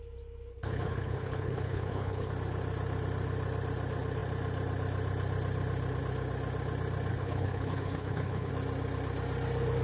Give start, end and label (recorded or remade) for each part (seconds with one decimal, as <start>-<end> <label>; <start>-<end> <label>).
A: 0.0-0.5 recorded; 0.5-2.3 remade; 2.3-7.1 recorded; 7.1-8.5 remade; 8.5-9.8 recorded